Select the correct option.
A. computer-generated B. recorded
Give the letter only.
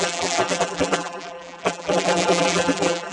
A